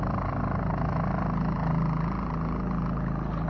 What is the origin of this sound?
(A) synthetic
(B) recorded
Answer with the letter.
B